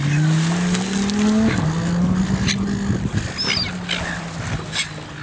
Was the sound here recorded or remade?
recorded